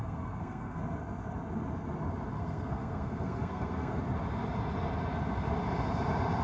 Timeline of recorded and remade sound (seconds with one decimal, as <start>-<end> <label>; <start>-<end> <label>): 0.0-0.8 remade; 0.8-2.3 recorded; 2.3-4.0 remade; 4.0-6.4 recorded

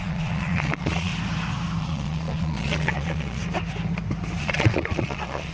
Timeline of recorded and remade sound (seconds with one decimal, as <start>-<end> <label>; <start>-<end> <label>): 0.0-1.1 remade; 1.1-1.8 recorded; 1.8-3.4 remade; 3.4-4.4 recorded; 4.4-5.5 remade

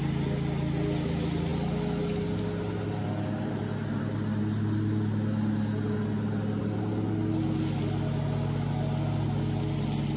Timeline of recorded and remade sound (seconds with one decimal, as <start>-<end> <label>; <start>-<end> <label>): 0.0-10.2 recorded

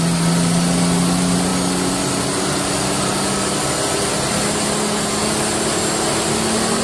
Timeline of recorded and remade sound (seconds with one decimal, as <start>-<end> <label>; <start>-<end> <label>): 0.0-6.8 recorded

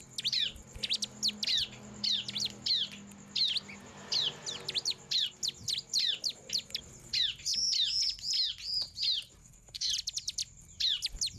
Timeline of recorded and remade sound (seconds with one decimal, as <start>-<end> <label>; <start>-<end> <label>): 0.0-9.4 recorded; 9.4-9.9 remade; 9.9-11.4 recorded

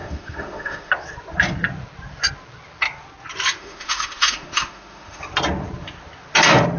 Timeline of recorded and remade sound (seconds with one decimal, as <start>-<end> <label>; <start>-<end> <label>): 0.0-0.9 remade; 0.9-3.6 recorded; 3.6-5.2 remade; 5.2-6.8 recorded

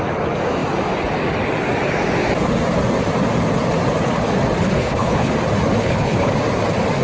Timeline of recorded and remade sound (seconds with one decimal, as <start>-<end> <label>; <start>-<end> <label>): 0.0-4.6 recorded; 4.6-5.3 remade; 5.3-5.8 recorded; 5.8-6.3 remade; 6.3-7.0 recorded